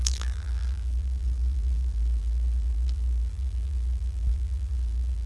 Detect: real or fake fake